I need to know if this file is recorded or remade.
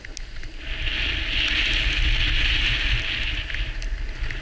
recorded